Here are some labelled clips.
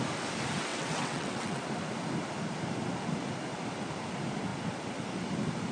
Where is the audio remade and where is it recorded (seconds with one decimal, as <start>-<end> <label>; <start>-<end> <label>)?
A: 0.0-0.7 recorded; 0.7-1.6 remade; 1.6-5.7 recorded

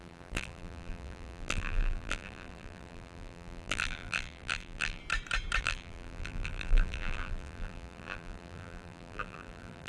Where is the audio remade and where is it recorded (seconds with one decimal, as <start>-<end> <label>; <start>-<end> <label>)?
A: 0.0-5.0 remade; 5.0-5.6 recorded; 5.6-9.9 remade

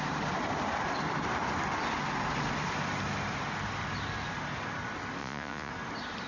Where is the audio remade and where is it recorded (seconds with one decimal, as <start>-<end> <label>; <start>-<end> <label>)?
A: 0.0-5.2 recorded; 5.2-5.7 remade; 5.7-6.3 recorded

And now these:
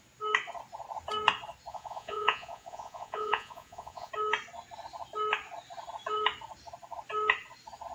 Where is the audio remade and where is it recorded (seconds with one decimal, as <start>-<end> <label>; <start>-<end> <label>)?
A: 0.0-1.7 recorded; 1.7-4.1 remade; 4.1-7.9 recorded